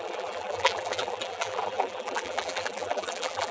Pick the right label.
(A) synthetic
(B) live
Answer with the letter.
A